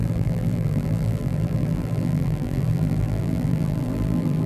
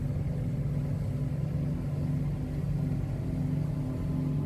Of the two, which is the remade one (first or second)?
first